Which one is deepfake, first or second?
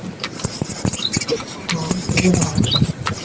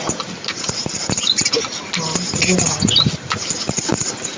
first